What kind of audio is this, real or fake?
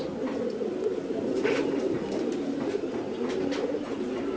real